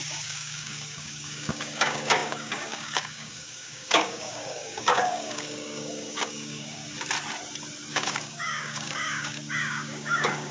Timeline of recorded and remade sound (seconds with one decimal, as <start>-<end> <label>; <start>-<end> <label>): 0.0-6.8 remade; 6.8-7.9 recorded; 7.9-10.5 remade